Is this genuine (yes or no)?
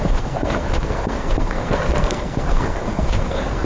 no